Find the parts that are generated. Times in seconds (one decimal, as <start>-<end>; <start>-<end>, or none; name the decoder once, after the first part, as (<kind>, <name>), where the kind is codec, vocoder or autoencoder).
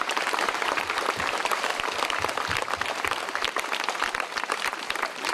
0.0-1.7 (vocoder, BigVGAN v2); 4.4-5.3